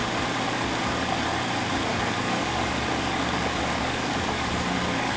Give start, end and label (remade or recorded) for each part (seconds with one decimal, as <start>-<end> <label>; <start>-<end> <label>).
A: 0.0-1.9 recorded; 1.9-5.2 remade